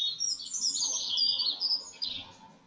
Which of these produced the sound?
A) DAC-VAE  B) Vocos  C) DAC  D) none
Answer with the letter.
D